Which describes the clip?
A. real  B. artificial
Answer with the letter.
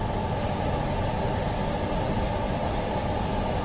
A